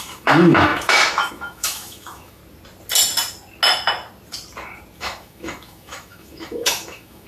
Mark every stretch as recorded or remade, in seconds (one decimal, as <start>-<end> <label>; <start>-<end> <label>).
0.0-2.4 remade; 2.4-5.0 recorded; 5.0-7.3 remade